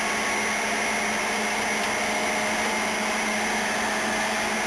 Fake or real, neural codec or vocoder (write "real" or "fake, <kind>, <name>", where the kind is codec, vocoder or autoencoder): real